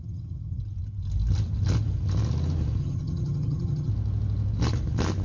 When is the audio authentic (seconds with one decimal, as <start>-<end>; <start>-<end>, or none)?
0.6-2.8; 3.9-5.2